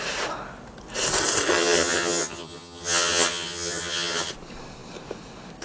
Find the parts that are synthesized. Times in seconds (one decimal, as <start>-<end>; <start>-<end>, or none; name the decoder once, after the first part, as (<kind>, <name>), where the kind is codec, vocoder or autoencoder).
1.5-4.3 (vocoder, HiFi-GAN)

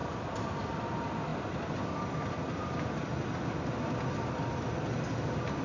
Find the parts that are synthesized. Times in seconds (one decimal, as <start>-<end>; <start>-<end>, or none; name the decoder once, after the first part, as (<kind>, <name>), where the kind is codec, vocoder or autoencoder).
none

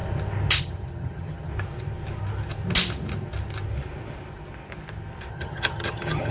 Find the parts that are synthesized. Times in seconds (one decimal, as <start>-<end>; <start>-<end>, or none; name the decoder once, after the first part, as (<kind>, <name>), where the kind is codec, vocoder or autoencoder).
0.6-1.5 (vocoder, HiFi-GAN); 5.3-6.3

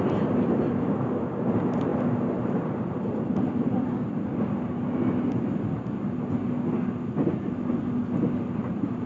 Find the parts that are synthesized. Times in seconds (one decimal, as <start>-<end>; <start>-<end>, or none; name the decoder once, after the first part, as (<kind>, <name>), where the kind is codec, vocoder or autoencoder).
none

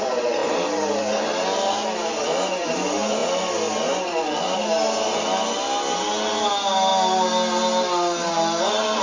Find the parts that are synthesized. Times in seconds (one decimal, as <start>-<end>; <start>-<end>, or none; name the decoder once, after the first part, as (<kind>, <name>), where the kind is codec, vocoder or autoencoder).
none

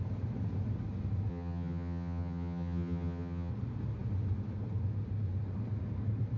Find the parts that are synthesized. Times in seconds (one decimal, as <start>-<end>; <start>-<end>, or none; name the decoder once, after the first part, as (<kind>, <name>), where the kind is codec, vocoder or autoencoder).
1.3-3.5 (vocoder, HiFi-GAN)